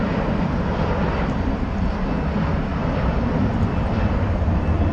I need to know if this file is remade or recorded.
recorded